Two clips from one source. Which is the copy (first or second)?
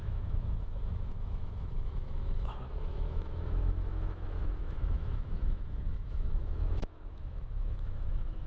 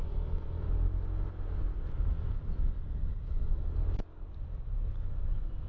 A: first